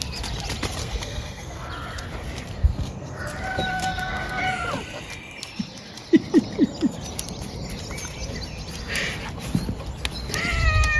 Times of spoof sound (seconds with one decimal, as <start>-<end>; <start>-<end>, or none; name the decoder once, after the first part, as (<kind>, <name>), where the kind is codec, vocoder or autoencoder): 0.8-1.7 (codec, SNAC); 2.6-3.2; 3.7-4.4

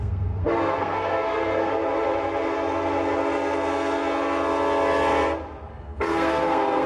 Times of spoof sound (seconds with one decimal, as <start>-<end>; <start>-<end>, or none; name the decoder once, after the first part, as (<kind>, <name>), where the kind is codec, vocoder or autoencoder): 0.0-1.7 (codec, SNAC); 5.8-6.9

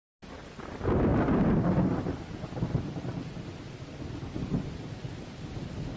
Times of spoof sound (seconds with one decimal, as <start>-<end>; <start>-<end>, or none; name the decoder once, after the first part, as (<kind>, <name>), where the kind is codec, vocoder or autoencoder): none

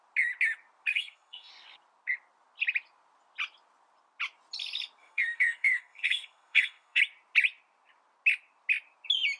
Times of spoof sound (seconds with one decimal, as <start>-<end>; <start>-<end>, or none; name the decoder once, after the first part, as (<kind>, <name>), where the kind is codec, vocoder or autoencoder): 0.9-1.5 (codec, SNAC); 5.0-7.0

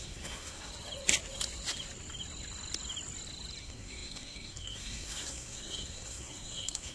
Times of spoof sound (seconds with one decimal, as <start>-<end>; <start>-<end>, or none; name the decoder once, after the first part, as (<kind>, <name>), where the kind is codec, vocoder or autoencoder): 0.0-0.7 (codec, SNAC); 3.6-6.9

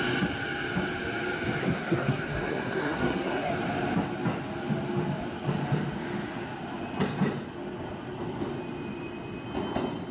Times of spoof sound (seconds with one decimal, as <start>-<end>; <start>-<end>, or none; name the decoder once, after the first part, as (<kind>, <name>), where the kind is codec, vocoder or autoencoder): 1.6-3.5 (codec, SNAC)

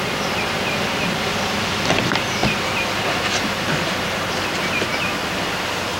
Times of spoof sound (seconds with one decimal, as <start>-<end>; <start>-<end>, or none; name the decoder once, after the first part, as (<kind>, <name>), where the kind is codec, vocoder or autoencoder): none